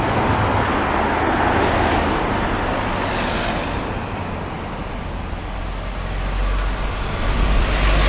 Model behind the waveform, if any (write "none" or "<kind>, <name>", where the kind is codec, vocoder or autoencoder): none